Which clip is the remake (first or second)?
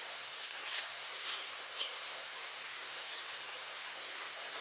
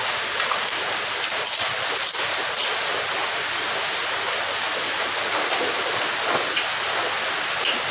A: first